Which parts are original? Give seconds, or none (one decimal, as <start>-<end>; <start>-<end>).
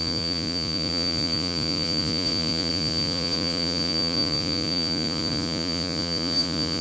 none